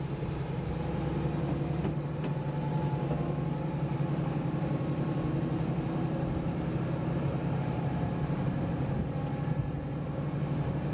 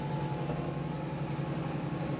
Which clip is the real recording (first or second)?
second